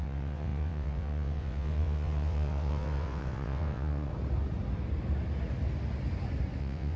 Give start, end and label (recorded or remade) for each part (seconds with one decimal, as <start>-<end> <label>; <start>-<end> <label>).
0.0-4.1 remade; 4.1-6.6 recorded; 6.6-7.0 remade

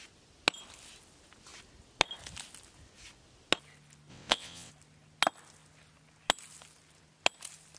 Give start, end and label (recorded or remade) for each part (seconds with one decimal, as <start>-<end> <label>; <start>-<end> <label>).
0.0-4.1 recorded; 4.1-4.7 remade; 4.7-7.8 recorded